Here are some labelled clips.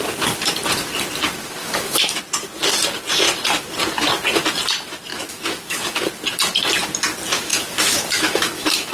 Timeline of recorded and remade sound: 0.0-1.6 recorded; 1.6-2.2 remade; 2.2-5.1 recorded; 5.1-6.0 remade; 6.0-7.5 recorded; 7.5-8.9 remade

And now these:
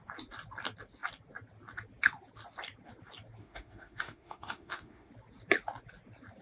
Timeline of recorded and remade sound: 0.0-3.4 recorded; 3.4-5.1 remade; 5.1-6.4 recorded

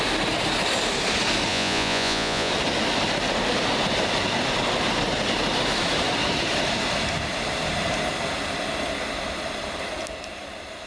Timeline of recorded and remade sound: 0.0-1.5 recorded; 1.5-2.5 remade; 2.5-10.9 recorded

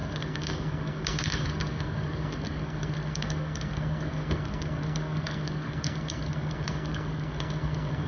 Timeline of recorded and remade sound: 0.0-8.1 remade

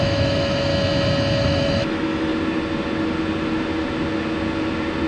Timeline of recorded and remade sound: 0.0-0.7 remade; 0.7-1.4 recorded; 1.4-2.3 remade; 2.3-5.1 recorded

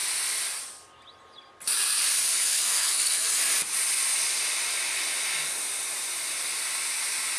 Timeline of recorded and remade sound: 0.0-2.3 recorded; 2.3-3.3 remade; 3.3-7.4 recorded

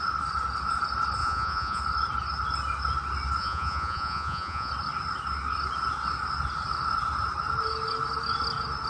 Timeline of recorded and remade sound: 0.0-1.2 recorded; 1.2-1.8 remade; 1.8-3.4 recorded; 3.4-4.7 remade; 4.7-8.9 recorded